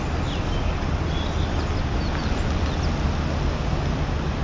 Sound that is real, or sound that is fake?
real